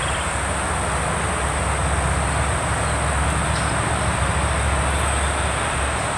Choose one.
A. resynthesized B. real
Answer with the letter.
B